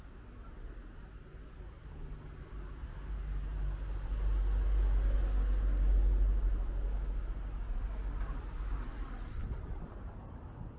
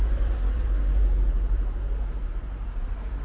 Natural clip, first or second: first